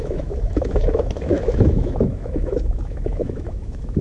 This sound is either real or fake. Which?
fake